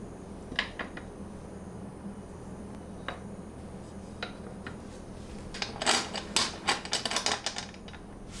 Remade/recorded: recorded